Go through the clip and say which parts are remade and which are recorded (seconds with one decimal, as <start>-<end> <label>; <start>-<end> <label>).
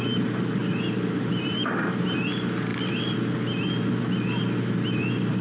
0.0-5.4 recorded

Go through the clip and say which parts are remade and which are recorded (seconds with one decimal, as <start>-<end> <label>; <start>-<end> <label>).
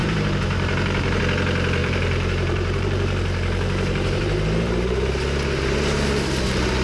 0.0-1.2 remade; 1.2-1.8 recorded; 1.8-5.2 remade; 5.2-6.8 recorded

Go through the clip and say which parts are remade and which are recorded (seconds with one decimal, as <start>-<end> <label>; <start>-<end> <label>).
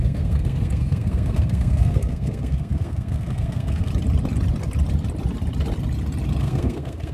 0.0-3.9 remade; 3.9-6.4 recorded; 6.4-7.1 remade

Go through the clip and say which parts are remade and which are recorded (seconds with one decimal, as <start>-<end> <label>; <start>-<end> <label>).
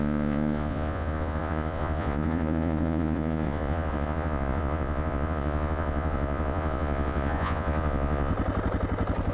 0.0-8.3 remade; 8.3-9.3 recorded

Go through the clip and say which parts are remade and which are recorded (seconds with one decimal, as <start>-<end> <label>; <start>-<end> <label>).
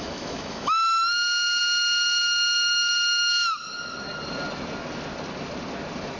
0.0-3.3 remade; 3.3-6.2 recorded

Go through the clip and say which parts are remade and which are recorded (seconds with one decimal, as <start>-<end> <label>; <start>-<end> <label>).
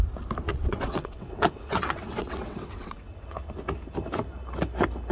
0.0-0.5 recorded; 0.5-3.4 remade; 3.4-5.1 recorded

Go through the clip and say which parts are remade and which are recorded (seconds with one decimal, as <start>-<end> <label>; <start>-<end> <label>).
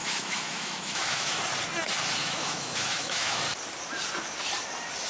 0.0-1.4 remade; 1.4-2.2 recorded; 2.2-3.4 remade; 3.4-5.1 recorded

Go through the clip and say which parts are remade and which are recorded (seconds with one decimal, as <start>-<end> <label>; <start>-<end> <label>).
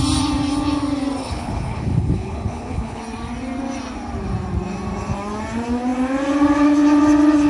0.0-1.2 recorded; 1.2-3.0 remade; 3.0-7.5 recorded